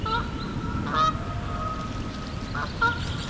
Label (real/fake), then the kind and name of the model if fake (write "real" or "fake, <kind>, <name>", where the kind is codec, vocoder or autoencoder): real